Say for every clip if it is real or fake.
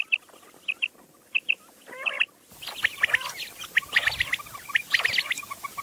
real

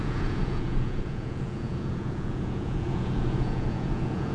fake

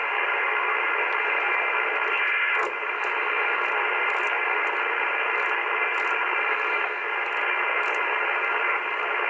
real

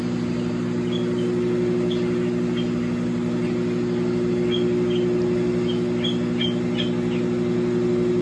real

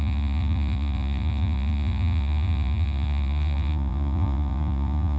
fake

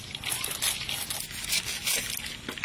real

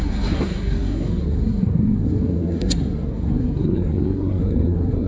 fake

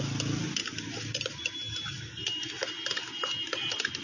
real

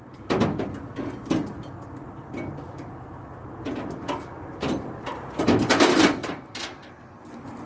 real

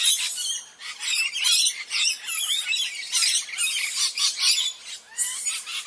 real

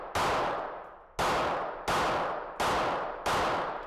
real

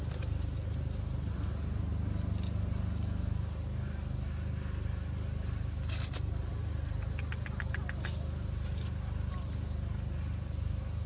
real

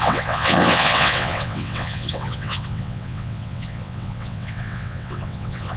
fake